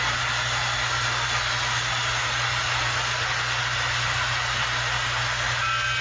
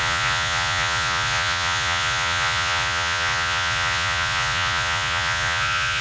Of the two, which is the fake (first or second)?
second